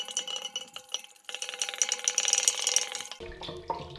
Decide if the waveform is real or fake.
real